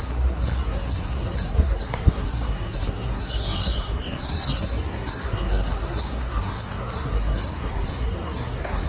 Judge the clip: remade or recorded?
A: remade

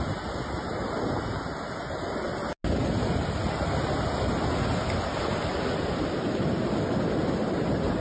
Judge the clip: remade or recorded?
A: recorded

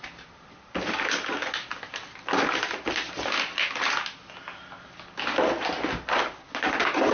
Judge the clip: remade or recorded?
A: recorded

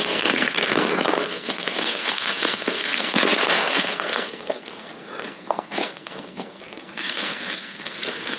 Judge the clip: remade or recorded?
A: remade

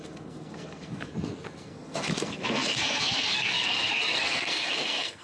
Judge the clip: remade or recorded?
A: remade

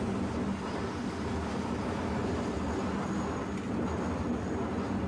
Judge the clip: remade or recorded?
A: recorded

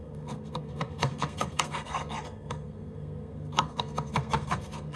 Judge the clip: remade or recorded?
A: remade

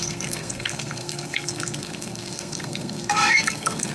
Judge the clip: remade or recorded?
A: remade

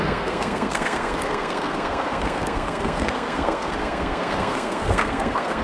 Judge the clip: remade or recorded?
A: remade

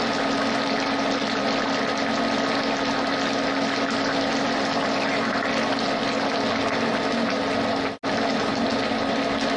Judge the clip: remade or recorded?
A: recorded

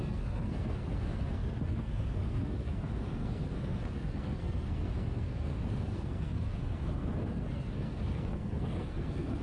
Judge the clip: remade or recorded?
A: remade